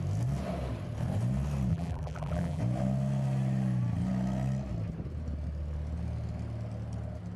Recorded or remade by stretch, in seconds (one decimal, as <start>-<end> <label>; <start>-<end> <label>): 0.0-1.7 recorded; 1.7-2.6 remade; 2.6-7.4 recorded